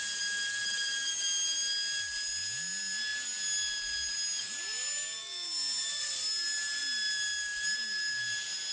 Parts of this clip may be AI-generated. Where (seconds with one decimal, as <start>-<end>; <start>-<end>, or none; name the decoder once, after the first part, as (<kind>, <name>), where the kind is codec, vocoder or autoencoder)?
none